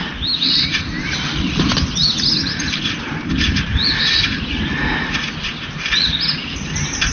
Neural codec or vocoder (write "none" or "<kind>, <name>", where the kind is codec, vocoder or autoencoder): none